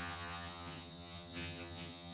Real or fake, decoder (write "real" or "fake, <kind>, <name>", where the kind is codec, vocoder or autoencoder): fake, vocoder, HiFi-GAN